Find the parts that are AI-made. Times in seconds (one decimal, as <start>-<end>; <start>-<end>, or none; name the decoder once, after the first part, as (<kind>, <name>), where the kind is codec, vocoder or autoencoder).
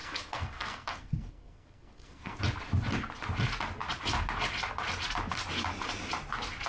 0.0-2.4 (codec, SNAC)